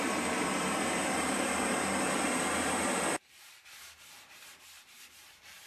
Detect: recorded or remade remade